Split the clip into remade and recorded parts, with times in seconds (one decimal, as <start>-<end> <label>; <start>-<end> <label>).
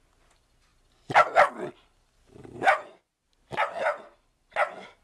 0.0-2.4 recorded; 2.4-3.1 remade; 3.1-5.0 recorded